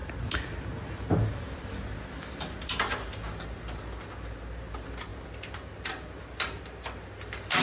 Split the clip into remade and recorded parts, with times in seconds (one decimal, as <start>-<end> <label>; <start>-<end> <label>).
0.0-7.6 recorded